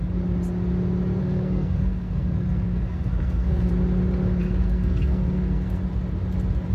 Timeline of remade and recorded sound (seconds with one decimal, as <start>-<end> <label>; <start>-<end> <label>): 0.0-1.2 recorded; 1.2-3.7 remade; 3.7-4.4 recorded; 4.4-5.8 remade; 5.8-6.7 recorded